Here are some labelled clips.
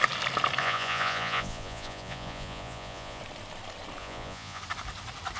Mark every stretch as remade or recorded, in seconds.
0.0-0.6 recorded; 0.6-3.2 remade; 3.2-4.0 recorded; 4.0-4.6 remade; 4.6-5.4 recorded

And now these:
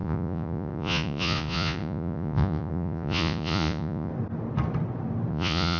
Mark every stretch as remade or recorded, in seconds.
0.0-4.1 remade; 4.1-5.3 recorded; 5.3-5.8 remade

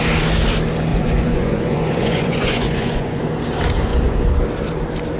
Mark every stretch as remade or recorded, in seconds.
0.0-0.9 recorded; 0.9-3.2 remade; 3.2-3.9 recorded; 3.9-4.4 remade; 4.4-5.2 recorded

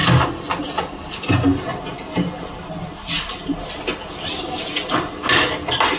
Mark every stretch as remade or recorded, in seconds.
0.0-6.0 recorded

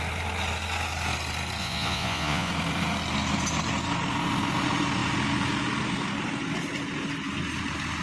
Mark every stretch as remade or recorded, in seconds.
0.0-1.6 recorded; 1.6-2.5 remade; 2.5-8.0 recorded

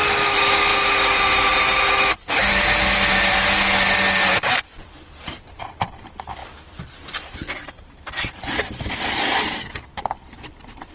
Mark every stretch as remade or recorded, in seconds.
0.0-10.9 recorded

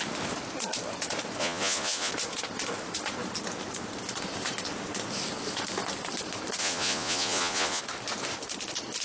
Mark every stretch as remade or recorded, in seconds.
0.0-1.4 recorded; 1.4-2.1 remade; 2.1-6.6 recorded; 6.6-7.8 remade; 7.8-9.0 recorded

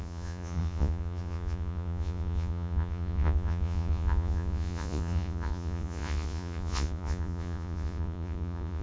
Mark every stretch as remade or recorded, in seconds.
0.0-8.8 remade